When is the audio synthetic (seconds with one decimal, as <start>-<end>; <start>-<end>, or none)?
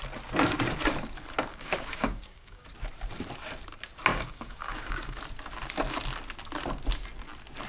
1.5-2.6; 4.1-5.2